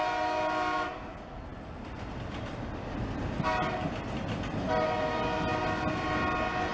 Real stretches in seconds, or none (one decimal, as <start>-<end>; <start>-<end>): 0.0-6.7